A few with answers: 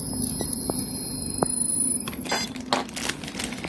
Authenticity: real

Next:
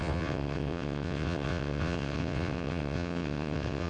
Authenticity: fake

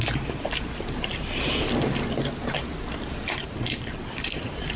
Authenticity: real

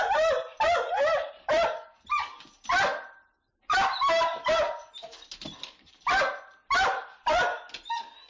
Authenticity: real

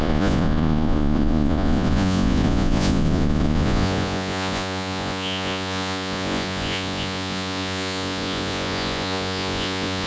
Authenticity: fake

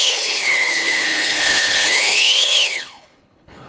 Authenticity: fake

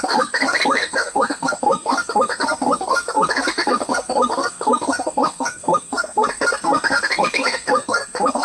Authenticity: fake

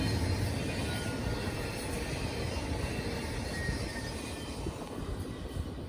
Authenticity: real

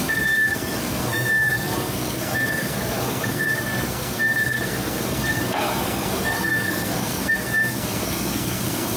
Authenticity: fake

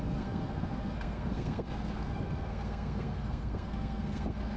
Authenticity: fake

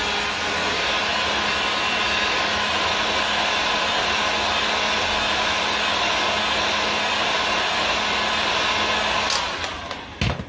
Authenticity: real